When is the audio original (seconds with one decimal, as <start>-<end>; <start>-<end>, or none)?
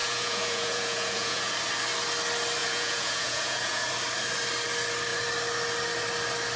1.5-2.6; 3.9-6.6